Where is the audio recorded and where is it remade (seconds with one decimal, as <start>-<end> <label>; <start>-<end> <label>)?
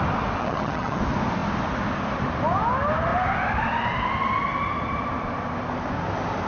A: 0.0-0.4 recorded; 0.4-1.0 remade; 1.0-6.5 recorded